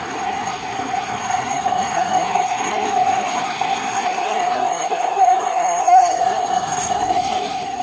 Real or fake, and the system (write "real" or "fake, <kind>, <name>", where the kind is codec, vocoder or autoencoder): fake, codec, SNAC